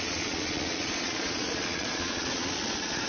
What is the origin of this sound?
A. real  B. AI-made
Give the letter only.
B